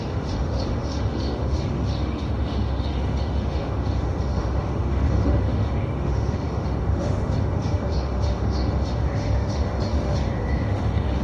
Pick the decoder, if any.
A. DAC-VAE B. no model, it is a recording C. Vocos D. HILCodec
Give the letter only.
A